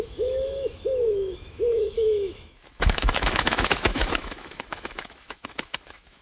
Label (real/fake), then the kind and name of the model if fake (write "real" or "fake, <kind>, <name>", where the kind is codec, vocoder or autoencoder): fake, autoencoder, DAC-VAE